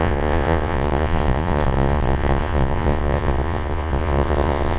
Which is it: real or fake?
fake